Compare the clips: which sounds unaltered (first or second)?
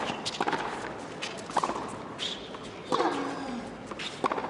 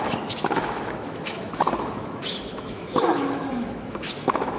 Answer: first